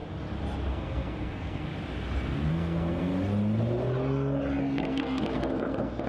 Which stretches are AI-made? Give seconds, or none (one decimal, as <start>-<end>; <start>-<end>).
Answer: 0.7-1.7; 2.5-3.1; 4.6-6.1